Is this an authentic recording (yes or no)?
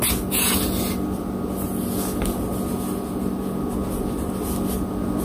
yes